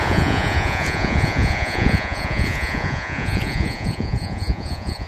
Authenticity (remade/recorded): remade